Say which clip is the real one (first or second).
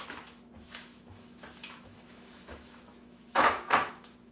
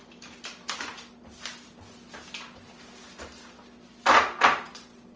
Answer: second